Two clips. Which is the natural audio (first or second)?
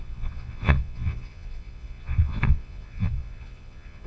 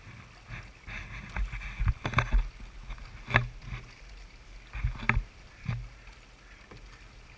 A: second